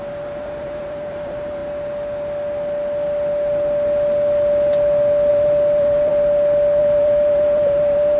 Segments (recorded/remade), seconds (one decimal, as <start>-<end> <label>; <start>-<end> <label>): 0.0-1.6 remade; 1.6-5.3 recorded; 5.3-6.1 remade; 6.1-6.8 recorded; 6.8-8.2 remade